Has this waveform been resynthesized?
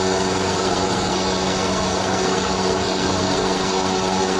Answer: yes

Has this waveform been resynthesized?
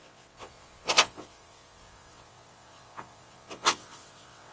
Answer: yes